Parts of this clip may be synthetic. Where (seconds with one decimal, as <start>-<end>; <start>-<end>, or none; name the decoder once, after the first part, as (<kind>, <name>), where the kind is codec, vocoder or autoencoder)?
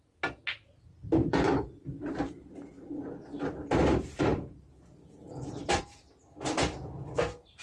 1.2-5.8 (vocoder, BigVGAN v2)